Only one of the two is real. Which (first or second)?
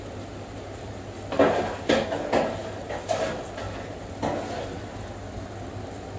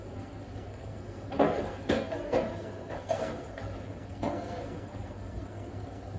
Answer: first